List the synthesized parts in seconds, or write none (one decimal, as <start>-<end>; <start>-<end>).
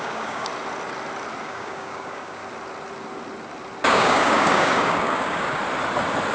0.0-0.5; 1.4-2.4; 3.8-5.6